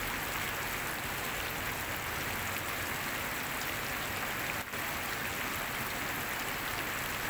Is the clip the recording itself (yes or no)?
yes